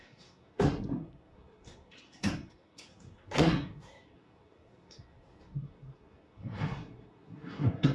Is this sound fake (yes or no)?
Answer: yes